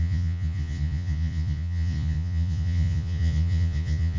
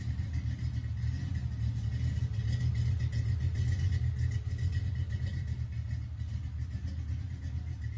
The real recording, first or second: second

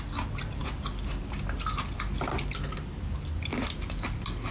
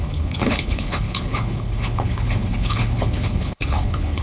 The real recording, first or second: first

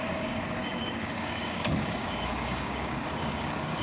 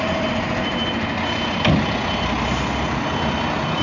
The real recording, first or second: second